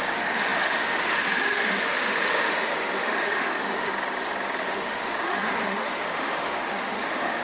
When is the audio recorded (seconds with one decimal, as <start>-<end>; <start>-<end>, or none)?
3.9-4.6